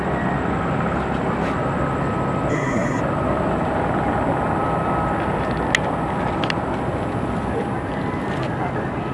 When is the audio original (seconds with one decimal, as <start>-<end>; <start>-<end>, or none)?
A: 0.0-2.5; 3.0-9.1